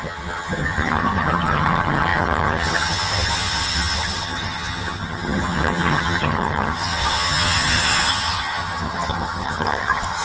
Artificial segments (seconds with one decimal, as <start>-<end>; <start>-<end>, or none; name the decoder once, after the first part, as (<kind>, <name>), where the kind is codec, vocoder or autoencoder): 0.0-10.2 (vocoder, HiFi-GAN)